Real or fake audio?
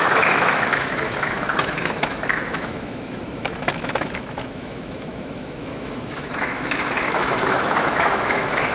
fake